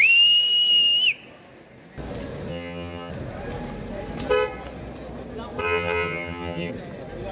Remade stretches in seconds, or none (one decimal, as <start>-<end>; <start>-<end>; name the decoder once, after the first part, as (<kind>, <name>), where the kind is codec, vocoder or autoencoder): 2.5-3.1 (vocoder, HiFi-GAN); 5.6-6.7